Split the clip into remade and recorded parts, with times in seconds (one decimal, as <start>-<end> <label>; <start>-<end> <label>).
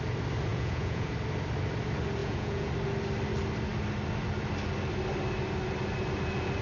0.0-0.5 recorded; 0.5-1.1 remade; 1.1-2.2 recorded; 2.2-2.7 remade; 2.7-6.6 recorded